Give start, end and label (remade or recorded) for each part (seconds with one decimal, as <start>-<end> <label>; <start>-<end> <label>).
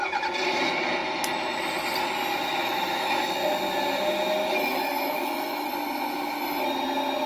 0.0-2.6 recorded; 2.6-3.3 remade; 3.3-4.4 recorded; 4.4-5.7 remade; 5.7-7.3 recorded